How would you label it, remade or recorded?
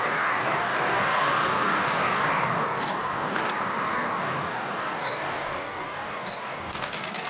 remade